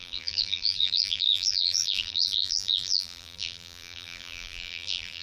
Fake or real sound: fake